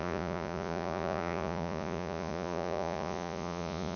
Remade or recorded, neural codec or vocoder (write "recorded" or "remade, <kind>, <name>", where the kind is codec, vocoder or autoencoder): remade, vocoder, Vocos